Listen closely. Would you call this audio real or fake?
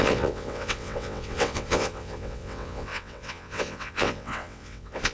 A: fake